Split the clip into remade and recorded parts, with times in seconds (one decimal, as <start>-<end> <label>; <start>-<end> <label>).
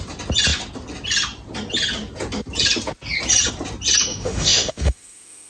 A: 0.0-4.1 recorded; 4.1-5.5 remade